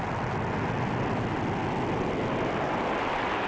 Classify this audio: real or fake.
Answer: real